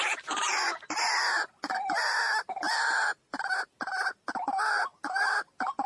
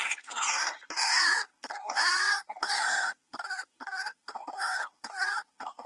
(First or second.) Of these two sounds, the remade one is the second